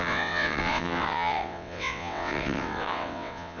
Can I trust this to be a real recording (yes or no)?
no